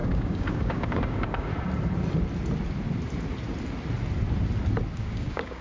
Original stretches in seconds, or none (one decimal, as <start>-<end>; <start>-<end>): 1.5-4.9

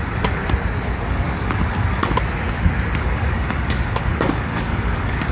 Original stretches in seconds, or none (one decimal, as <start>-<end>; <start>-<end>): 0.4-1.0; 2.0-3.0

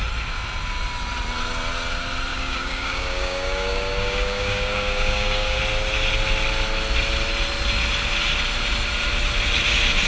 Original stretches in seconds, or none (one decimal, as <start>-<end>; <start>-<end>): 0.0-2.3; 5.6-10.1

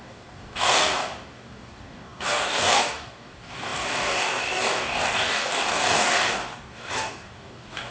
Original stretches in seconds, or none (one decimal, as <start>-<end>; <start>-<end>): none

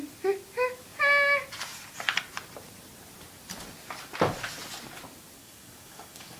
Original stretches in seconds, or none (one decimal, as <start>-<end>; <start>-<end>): 0.0-5.4

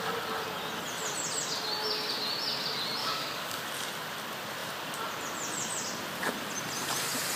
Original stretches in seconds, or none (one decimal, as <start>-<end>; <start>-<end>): 0.0-3.0; 3.7-7.4